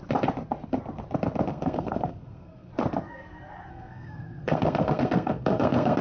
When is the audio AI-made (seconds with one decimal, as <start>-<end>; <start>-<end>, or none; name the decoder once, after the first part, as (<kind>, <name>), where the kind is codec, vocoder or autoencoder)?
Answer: 1.5-2.7 (codec, SNAC); 3.7-6.0